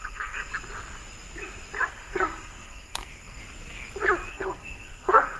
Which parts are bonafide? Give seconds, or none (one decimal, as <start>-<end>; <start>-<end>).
0.5-1.9; 3.4-4.3